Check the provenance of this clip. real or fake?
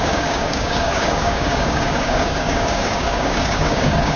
fake